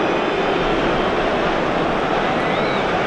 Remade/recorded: remade